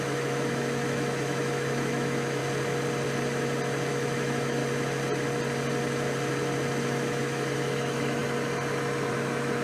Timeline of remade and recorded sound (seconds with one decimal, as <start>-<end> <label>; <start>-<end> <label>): 0.0-2.4 remade; 2.4-3.9 recorded; 3.9-4.6 remade; 4.6-6.8 recorded; 6.8-8.2 remade; 8.2-9.1 recorded; 9.1-9.6 remade